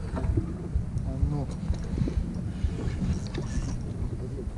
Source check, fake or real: real